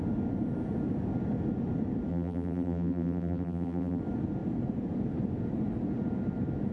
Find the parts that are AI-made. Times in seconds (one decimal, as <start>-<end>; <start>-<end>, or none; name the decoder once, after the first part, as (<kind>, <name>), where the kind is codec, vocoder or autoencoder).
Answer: 2.1-4.0 (vocoder, BigVGAN v2)